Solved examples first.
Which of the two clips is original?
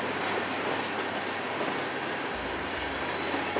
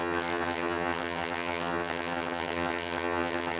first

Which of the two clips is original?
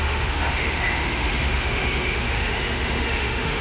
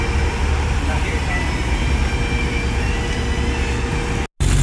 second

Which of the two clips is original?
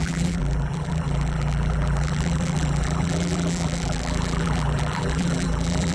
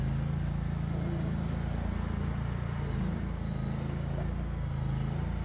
second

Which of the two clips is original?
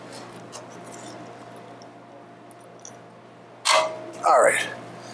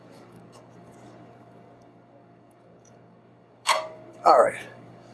first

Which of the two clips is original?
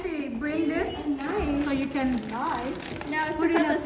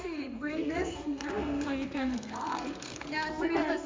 first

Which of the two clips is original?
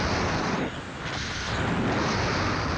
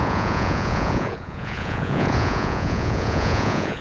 first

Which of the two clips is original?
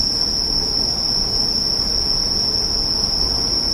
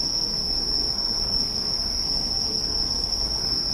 first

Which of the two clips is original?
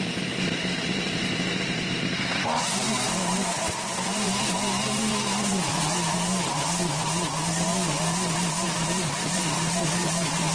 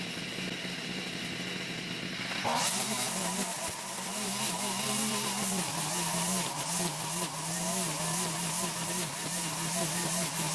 second